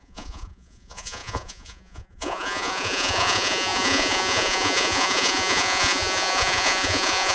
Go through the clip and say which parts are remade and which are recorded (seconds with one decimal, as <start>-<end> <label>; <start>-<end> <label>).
0.0-7.3 remade